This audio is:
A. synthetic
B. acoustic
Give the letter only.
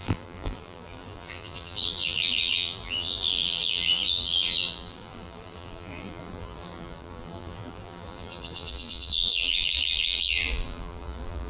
A